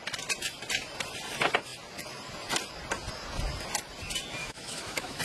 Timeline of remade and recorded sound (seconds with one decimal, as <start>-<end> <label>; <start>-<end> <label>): 0.0-4.4 recorded; 4.4-5.2 remade